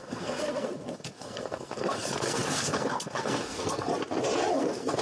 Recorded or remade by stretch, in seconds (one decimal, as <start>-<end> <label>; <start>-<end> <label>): 0.0-3.9 remade; 3.9-4.5 recorded; 4.5-5.0 remade